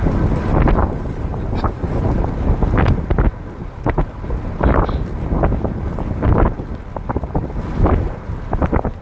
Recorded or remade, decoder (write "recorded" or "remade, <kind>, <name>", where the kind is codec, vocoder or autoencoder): recorded